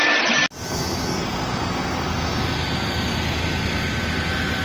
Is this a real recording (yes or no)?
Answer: yes